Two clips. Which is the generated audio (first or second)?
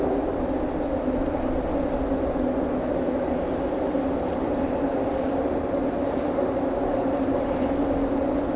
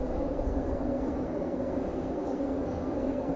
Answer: second